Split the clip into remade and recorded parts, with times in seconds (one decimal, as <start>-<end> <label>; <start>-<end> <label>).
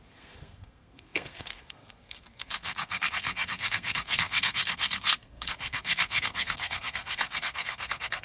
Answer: 0.0-8.2 remade